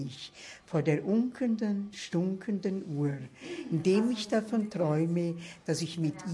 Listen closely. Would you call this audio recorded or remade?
recorded